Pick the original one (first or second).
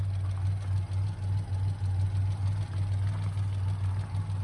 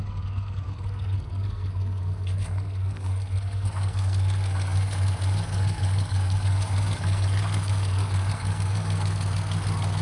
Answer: first